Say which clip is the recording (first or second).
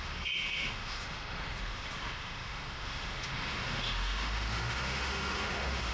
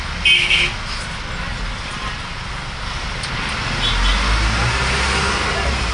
second